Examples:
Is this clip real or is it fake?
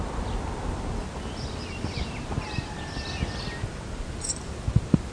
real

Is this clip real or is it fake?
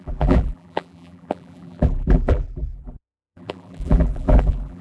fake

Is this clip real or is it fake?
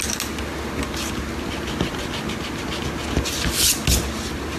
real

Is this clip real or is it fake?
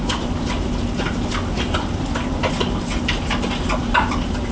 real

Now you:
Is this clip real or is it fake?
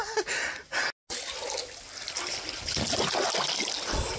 real